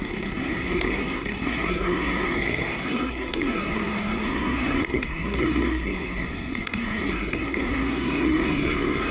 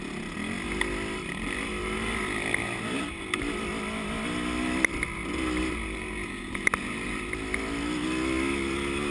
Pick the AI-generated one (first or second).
first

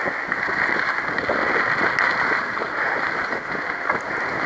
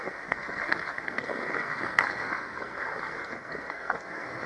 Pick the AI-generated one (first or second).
second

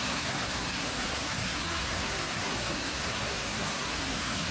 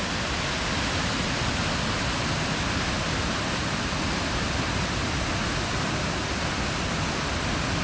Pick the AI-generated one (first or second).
first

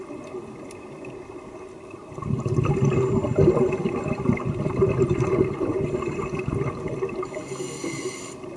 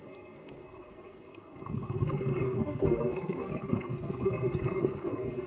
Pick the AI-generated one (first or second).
second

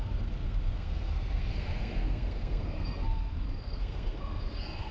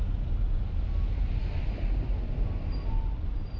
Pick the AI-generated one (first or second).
first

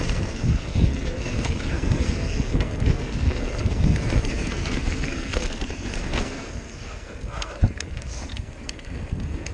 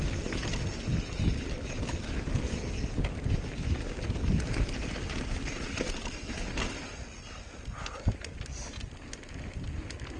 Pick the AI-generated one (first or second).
first